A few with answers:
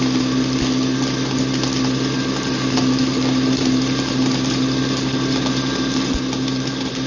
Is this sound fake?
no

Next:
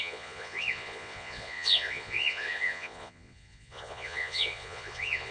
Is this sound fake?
yes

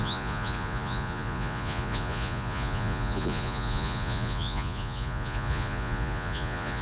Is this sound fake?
yes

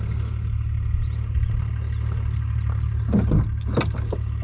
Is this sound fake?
no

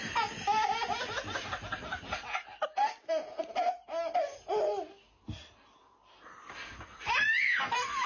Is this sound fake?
no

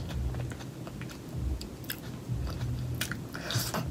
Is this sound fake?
no